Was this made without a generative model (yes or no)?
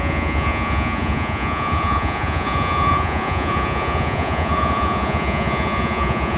no